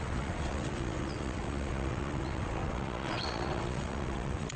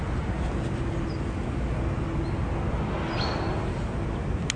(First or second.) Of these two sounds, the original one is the second